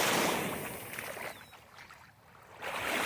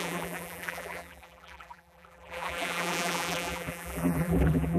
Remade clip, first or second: second